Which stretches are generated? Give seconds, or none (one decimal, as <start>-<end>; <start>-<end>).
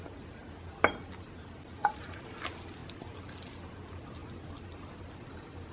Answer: 1.7-2.3